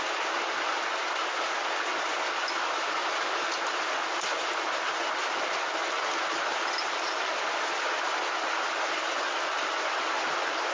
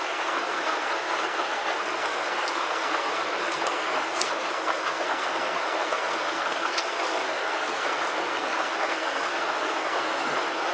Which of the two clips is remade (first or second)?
second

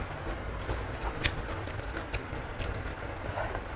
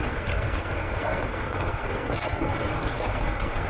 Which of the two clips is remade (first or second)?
second